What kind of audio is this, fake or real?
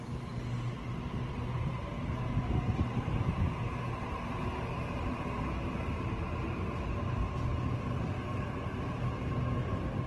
real